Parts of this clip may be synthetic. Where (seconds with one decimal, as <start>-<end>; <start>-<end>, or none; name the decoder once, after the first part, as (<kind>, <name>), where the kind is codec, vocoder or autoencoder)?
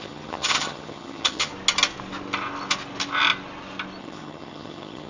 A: 0.0-1.5 (vocoder, HiFi-GAN); 4.0-5.1